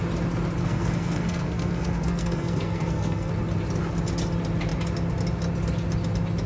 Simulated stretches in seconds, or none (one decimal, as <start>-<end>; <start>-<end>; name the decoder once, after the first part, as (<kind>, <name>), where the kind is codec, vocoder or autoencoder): 0.6-3.3 (codec, SNAC)